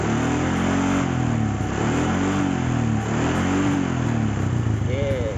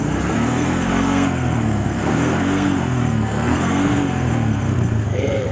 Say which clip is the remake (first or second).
second